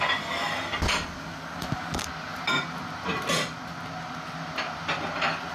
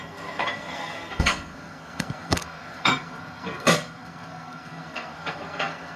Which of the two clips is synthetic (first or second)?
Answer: second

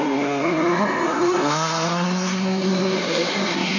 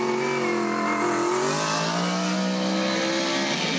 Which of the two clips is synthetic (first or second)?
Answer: first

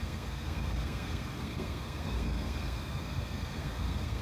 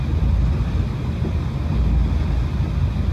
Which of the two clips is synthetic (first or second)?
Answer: first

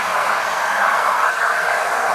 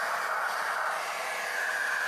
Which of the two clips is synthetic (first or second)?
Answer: first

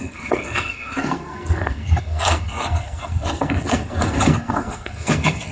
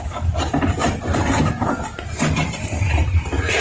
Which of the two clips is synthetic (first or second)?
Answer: first